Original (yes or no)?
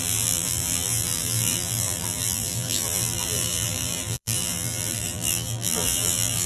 no